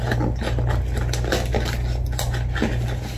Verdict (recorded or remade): recorded